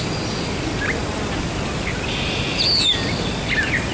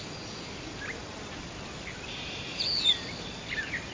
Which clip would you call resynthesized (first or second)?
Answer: second